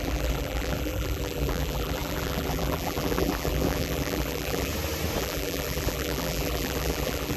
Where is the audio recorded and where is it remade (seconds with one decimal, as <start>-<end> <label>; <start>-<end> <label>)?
0.0-4.7 remade; 4.7-5.2 recorded; 5.2-7.4 remade